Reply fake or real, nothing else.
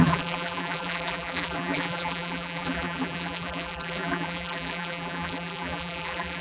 fake